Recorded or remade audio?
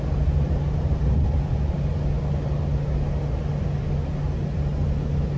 recorded